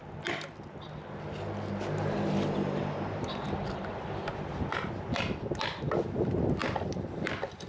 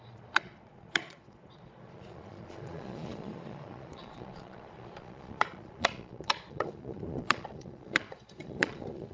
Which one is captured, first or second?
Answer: first